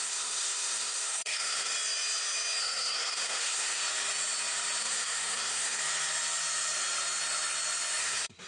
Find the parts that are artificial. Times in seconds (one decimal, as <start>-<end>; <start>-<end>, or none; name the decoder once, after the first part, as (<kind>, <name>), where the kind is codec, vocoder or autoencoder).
0.0-1.7 (codec, SNAC); 2.6-3.8; 4.8-5.8; 8.0-8.5